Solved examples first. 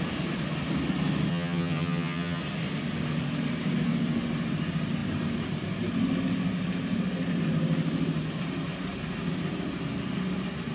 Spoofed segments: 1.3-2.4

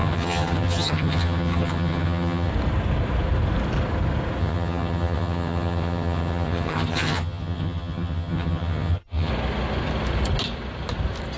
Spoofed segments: 0.0-2.5; 4.4-9.3

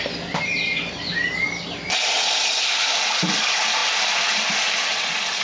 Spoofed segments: none

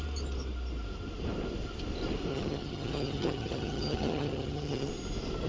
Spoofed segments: 2.3-4.9

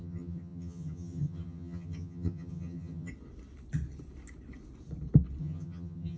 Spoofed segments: 0.0-3.1; 5.4-6.2